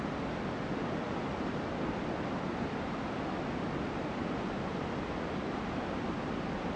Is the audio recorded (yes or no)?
yes